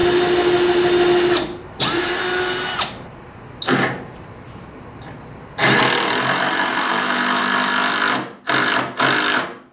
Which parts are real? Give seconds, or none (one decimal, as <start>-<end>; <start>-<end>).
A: 0.0-6.7; 7.4-9.7